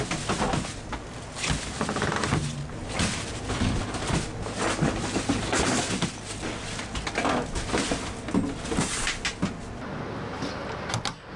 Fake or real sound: real